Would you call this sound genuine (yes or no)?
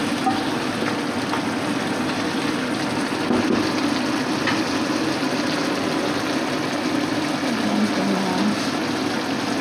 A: yes